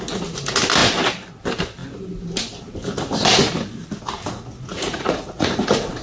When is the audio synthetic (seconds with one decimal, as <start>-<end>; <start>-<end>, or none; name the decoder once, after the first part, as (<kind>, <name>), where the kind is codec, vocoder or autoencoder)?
4.7-6.0 (vocoder, Vocos)